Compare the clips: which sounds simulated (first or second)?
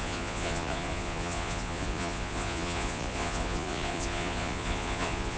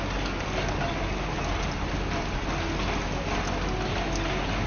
first